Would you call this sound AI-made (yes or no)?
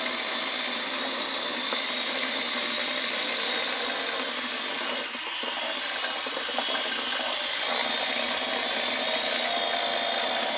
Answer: no